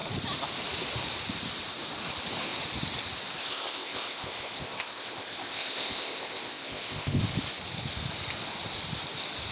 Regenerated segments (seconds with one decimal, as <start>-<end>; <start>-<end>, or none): 3.4-7.2